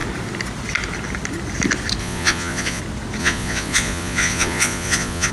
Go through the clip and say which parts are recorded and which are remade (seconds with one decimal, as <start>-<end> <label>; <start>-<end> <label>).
0.0-2.0 recorded; 2.0-2.8 remade; 2.8-3.2 recorded; 3.2-5.3 remade